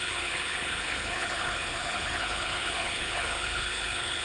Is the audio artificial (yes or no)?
yes